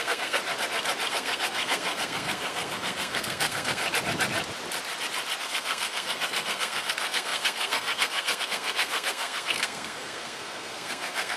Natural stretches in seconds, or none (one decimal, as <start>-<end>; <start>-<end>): 0.4-1.1; 3.8-5.4